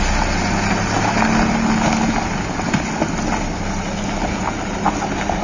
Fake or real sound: real